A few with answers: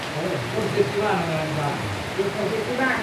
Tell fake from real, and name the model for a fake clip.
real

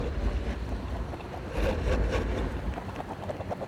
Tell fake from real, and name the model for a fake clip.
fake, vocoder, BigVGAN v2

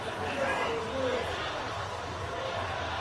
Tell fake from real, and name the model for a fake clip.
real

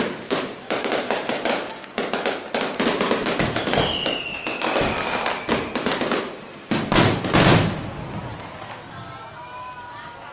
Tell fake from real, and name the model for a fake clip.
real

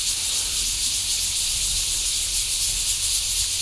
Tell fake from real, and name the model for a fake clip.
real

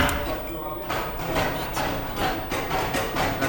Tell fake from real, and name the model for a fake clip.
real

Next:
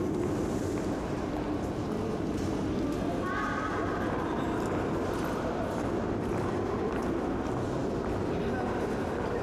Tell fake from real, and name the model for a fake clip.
real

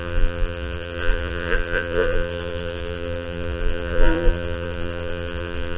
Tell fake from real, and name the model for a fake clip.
fake, vocoder, BigVGAN v2